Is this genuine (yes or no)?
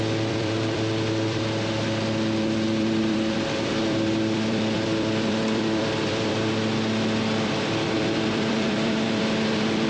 no